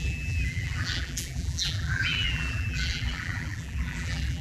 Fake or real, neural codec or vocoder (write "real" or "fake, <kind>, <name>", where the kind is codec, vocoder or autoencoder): fake, vocoder, BigVGAN v2